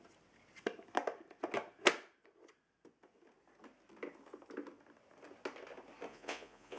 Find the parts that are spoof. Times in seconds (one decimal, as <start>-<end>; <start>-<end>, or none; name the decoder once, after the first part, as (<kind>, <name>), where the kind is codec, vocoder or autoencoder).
6.1-6.8 (vocoder, Vocos)